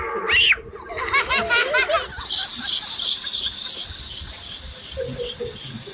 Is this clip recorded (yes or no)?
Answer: yes